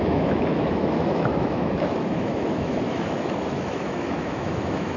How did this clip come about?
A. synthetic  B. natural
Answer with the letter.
A